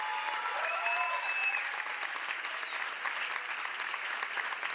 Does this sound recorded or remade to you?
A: recorded